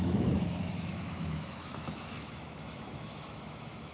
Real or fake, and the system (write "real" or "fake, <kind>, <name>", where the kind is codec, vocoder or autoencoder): fake, autoencoder, DAC-VAE